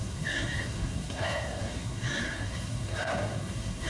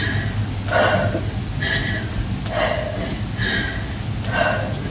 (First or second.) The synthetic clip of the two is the first